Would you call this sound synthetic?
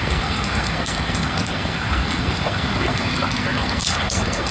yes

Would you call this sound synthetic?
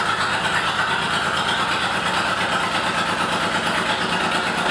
no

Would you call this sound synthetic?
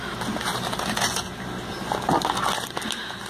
no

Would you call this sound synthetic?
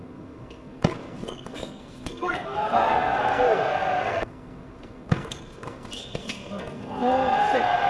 yes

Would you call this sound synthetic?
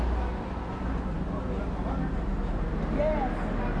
no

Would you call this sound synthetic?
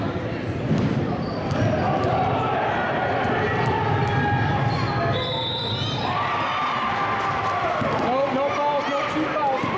no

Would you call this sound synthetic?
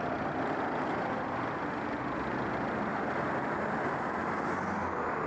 no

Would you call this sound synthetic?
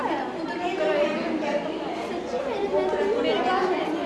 no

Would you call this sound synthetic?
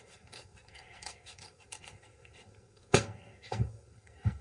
yes